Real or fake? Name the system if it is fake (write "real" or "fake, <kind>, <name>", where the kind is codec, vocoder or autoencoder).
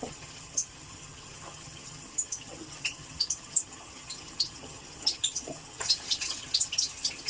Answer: fake, vocoder, HiFi-GAN